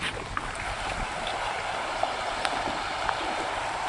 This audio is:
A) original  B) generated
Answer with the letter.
A